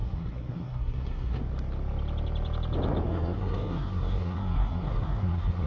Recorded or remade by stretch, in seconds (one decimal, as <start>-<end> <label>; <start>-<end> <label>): 0.0-1.4 remade; 1.4-3.1 recorded; 3.1-5.7 remade